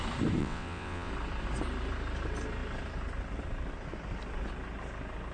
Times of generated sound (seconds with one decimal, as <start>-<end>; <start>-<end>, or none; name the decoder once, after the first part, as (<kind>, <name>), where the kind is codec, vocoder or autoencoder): 0.4-1.1 (vocoder, WaveNeXt)